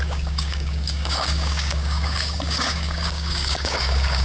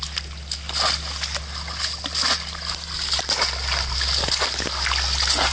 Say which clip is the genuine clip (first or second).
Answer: second